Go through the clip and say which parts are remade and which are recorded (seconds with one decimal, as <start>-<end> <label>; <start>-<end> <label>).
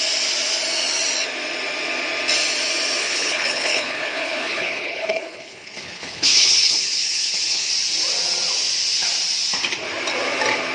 0.0-3.0 recorded; 3.0-7.7 remade; 7.7-10.7 recorded